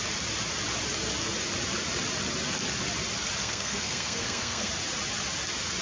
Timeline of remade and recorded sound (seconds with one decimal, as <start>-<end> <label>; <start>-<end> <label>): 0.0-3.4 recorded; 3.4-4.7 remade; 4.7-5.8 recorded